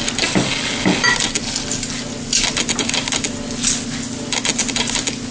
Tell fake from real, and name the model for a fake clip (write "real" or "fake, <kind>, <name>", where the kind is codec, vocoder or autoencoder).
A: real